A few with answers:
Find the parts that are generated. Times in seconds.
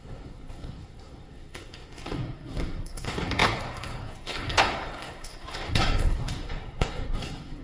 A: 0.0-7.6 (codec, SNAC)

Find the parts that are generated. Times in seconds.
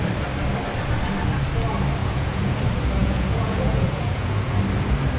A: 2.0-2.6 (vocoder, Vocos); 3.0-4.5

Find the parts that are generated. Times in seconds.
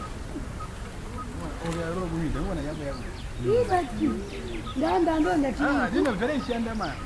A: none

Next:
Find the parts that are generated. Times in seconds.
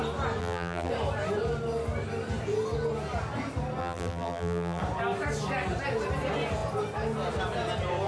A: 0.4-0.9 (vocoder, BigVGAN v2); 3.8-4.8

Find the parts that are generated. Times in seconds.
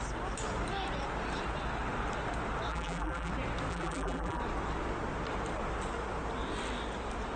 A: 2.7-3.3 (vocoder, BigVGAN v2); 3.7-4.4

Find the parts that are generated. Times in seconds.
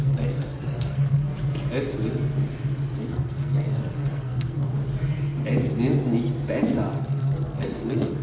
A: 0.0-1.3 (codec, SNAC); 3.1-4.7; 6.9-8.2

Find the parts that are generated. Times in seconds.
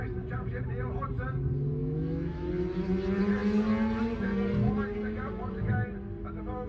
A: 1.8-2.5 (autoencoder, DAC-VAE)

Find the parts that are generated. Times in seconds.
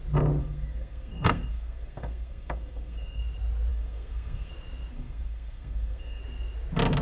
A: 0.4-3.2 (codec, SNAC); 3.7-4.5; 4.9-6.2